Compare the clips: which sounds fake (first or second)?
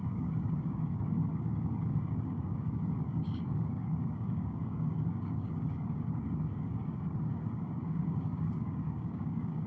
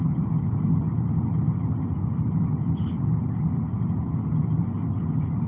first